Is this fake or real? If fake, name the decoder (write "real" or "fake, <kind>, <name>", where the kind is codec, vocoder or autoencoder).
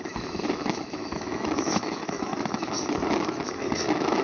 fake, autoencoder, DAC-VAE